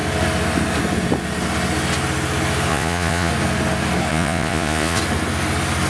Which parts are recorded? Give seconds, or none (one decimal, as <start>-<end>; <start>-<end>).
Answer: 0.0-2.7; 3.3-4.1; 5.0-5.9